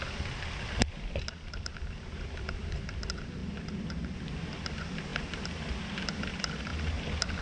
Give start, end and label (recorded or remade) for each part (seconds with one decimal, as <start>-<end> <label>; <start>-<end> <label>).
0.0-7.4 recorded